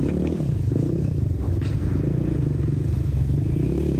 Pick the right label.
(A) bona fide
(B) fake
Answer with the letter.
B